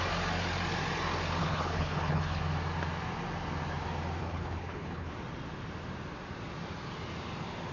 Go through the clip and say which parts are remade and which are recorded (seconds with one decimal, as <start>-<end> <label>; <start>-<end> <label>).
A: 0.0-1.4 recorded; 1.4-2.4 remade; 2.4-4.2 recorded; 4.2-5.1 remade; 5.1-7.7 recorded